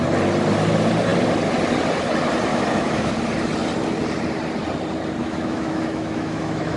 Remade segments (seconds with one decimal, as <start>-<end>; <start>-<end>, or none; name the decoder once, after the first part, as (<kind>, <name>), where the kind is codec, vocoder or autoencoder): 2.5-3.1 (autoencoder, DAC-VAE); 5.2-6.8